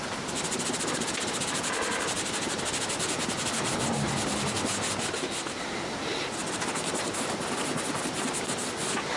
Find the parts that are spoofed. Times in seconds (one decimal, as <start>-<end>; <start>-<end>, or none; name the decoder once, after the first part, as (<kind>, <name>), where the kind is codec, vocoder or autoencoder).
none